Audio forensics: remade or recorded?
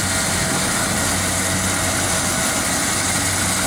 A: recorded